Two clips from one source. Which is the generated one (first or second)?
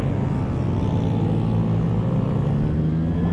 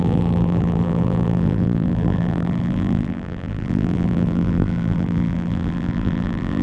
second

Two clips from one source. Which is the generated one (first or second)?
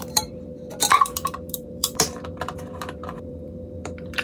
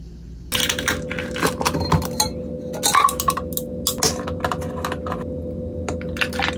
first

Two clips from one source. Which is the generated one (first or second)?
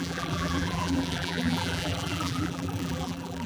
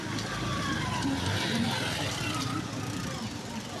first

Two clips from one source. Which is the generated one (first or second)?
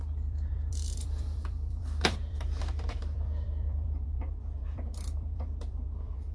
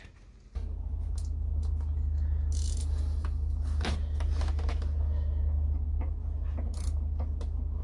first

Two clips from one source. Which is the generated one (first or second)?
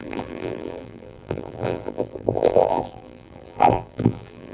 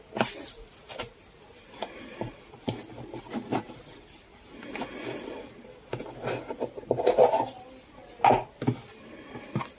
first